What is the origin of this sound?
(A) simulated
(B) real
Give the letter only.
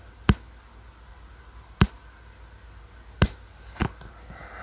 B